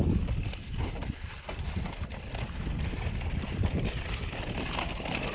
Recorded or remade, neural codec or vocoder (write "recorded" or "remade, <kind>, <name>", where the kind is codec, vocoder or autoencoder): remade, vocoder, BigVGAN v2